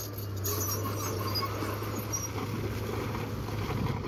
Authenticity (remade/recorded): recorded